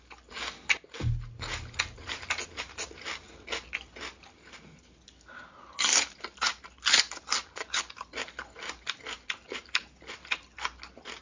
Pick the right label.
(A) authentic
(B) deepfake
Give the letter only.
A